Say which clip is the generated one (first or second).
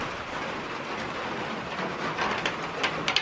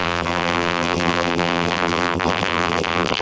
second